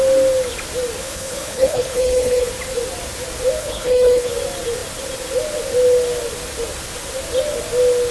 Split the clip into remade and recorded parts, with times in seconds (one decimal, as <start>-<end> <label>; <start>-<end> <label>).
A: 0.0-1.0 recorded; 1.0-2.5 remade; 2.5-3.6 recorded; 3.6-4.3 remade; 4.3-8.1 recorded